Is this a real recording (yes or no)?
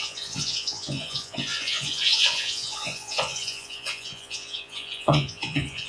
no